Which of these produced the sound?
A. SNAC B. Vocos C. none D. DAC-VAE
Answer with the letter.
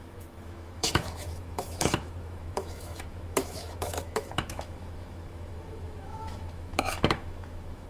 D